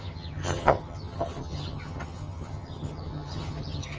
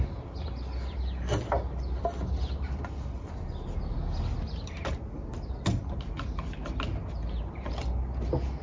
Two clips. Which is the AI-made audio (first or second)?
first